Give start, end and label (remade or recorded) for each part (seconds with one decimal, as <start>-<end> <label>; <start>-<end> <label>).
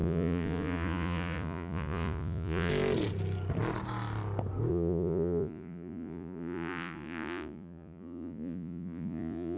0.0-2.7 remade; 2.7-4.7 recorded; 4.7-9.6 remade